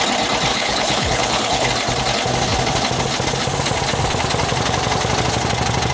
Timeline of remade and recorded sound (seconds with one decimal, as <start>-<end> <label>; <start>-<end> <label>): 0.0-0.5 recorded; 0.5-1.7 remade; 1.7-5.9 recorded